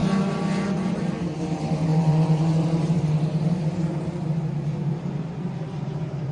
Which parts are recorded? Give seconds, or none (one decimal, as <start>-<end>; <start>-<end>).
0.0-0.9